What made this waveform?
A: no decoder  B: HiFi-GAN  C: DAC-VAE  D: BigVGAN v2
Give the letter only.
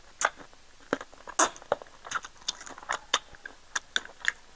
A